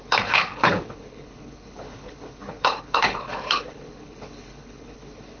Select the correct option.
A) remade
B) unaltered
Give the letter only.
A